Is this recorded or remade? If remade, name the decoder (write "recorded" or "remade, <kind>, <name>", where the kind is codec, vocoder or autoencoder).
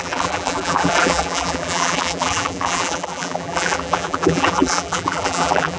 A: remade, vocoder, BigVGAN v2